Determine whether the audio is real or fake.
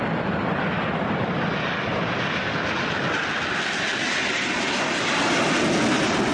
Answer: real